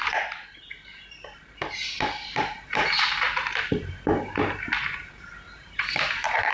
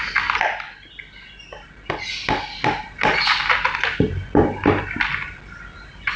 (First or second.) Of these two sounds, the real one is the second